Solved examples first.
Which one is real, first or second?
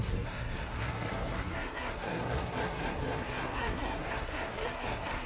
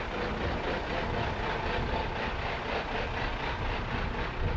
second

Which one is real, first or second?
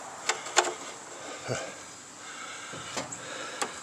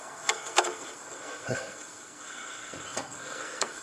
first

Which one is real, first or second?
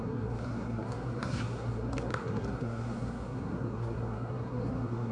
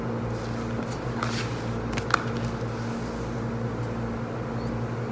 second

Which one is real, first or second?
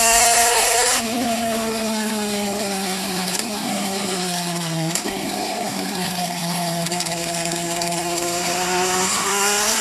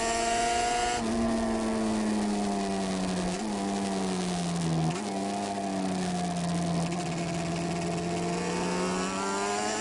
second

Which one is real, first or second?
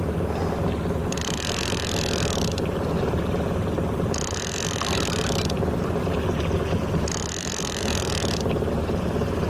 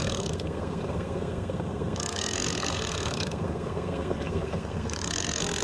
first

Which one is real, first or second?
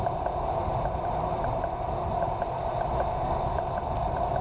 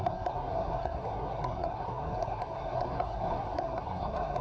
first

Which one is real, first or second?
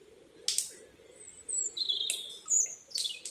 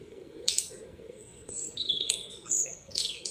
first